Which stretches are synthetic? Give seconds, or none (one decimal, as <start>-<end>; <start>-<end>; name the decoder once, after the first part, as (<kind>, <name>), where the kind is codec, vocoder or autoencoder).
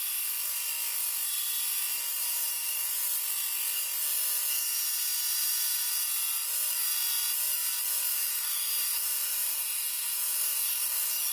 2.2-2.9 (autoencoder, DAC-VAE); 8.1-11.3